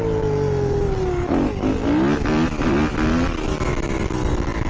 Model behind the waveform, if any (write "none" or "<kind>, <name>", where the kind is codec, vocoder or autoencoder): none